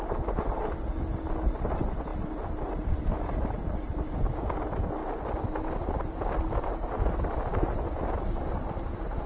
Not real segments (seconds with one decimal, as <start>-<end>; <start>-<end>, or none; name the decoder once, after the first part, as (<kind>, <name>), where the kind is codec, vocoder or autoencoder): none